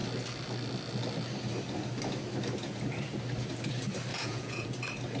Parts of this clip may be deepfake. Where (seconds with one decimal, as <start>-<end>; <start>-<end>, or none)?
4.1-4.7